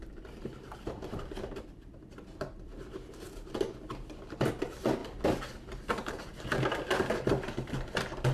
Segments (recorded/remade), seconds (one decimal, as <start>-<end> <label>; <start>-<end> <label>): 0.0-2.7 remade; 2.7-4.5 recorded; 4.5-5.0 remade; 5.0-6.1 recorded; 6.1-8.3 remade